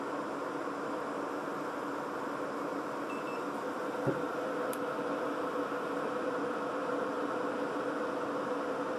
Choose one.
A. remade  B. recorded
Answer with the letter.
B